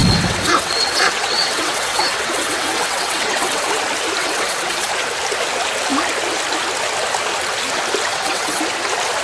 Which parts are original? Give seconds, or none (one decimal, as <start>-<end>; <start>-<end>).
3.8-4.2; 4.9-8.1; 8.6-9.2